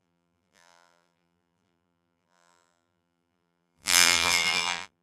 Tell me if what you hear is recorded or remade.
remade